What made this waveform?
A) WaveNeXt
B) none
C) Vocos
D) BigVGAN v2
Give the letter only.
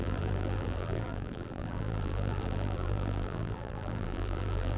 D